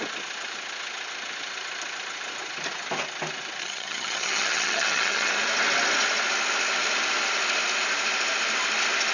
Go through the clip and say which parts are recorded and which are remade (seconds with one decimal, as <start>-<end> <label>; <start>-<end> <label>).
0.0-3.6 recorded; 3.6-5.3 remade; 5.3-9.1 recorded